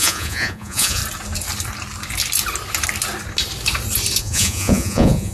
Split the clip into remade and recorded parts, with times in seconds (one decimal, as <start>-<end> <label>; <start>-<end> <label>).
0.0-1.0 remade; 1.0-4.2 recorded; 4.2-5.3 remade